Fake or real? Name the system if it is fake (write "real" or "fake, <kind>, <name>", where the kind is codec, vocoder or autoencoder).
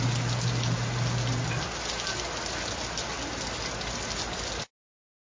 real